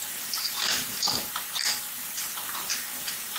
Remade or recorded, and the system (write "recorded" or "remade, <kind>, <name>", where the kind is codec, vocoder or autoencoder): recorded